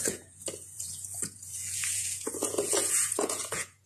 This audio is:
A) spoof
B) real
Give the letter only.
A